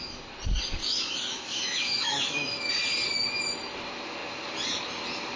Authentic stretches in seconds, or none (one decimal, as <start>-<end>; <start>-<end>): 0.0-0.8; 2.7-5.4

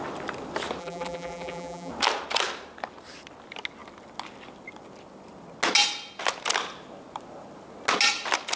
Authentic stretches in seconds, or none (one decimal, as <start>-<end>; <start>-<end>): 0.0-0.8; 1.9-8.6